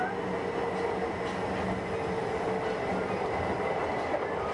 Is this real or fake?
real